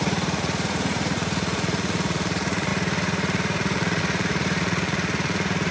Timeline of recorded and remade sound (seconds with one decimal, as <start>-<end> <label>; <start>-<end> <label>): 0.0-5.7 remade